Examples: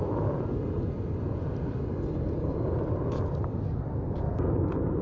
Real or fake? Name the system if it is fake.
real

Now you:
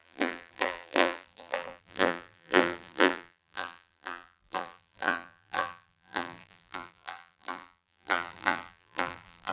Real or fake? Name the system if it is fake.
fake, vocoder, BigVGAN v2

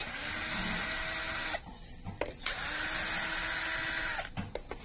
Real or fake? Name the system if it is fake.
real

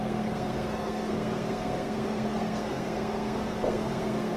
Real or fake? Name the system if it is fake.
fake, codec, SNAC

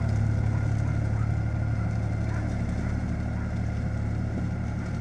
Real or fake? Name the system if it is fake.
real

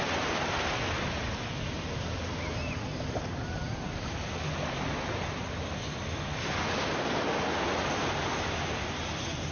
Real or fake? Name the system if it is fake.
real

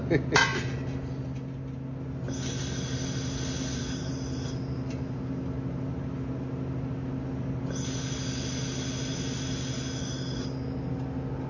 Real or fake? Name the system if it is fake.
real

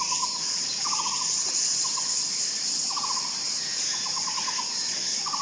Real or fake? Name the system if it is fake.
real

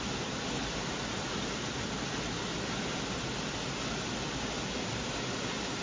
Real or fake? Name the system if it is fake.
real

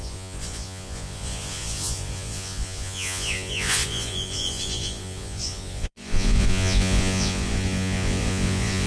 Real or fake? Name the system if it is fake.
fake, vocoder, Vocos